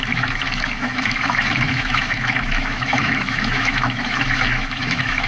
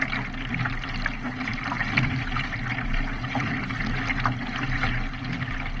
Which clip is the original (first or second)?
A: second